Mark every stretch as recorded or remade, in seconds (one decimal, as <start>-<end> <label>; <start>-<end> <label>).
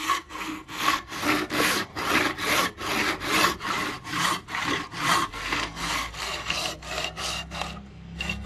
0.0-1.9 remade; 1.9-5.3 recorded; 5.3-8.5 remade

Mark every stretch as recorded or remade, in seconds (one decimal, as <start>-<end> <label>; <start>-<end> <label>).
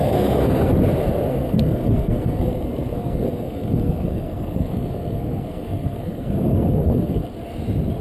0.0-0.7 remade; 0.7-1.3 recorded; 1.3-7.2 remade; 7.2-8.0 recorded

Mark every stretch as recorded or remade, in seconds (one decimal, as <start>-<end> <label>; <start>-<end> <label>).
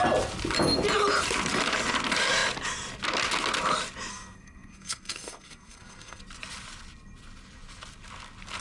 0.0-4.1 recorded; 4.1-6.2 remade; 6.2-8.6 recorded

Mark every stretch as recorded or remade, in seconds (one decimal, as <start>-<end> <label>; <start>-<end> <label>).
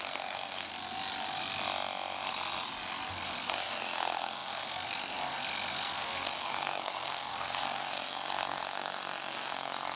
0.0-0.7 remade; 0.7-3.1 recorded; 3.1-10.0 remade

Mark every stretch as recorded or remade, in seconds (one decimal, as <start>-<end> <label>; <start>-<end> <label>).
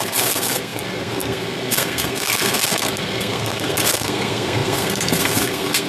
0.0-5.9 remade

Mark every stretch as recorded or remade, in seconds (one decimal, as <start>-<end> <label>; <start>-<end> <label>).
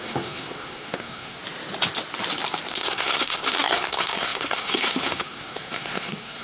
0.0-1.4 remade; 1.4-2.7 recorded; 2.7-6.4 remade